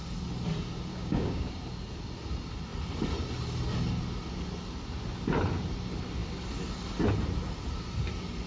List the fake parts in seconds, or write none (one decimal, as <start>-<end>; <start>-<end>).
0.9-1.5